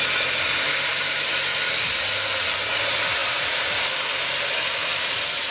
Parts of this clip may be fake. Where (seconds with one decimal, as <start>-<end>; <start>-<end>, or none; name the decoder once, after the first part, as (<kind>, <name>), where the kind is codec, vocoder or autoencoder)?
0.9-2.4 (vocoder, BigVGAN v2); 3.2-4.2; 4.9-5.5